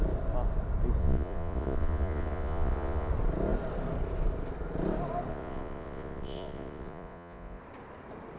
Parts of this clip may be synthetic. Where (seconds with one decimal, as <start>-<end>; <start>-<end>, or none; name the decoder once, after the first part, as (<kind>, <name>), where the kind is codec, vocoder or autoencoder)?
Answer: 1.0-3.1 (vocoder, Vocos); 5.3-7.6